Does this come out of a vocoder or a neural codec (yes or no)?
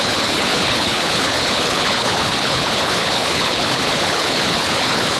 yes